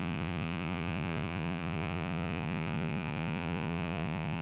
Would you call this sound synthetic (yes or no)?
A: yes